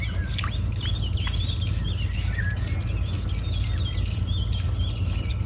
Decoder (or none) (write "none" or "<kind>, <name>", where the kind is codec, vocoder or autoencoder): none